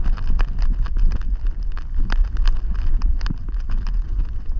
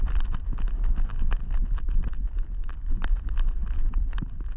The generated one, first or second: second